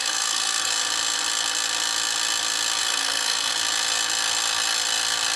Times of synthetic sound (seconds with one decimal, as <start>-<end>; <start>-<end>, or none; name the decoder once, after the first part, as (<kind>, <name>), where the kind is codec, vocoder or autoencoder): 0.0-0.7 (codec, SNAC); 2.8-3.5